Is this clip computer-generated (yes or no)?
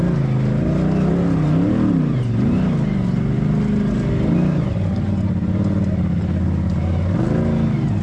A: no